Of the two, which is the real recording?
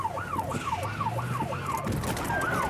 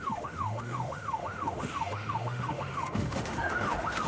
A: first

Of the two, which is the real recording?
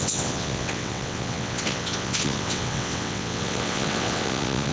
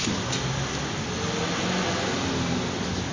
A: second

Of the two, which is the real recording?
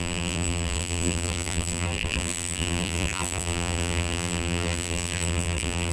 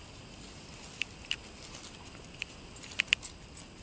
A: second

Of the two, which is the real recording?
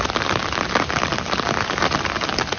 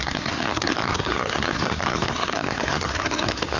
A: first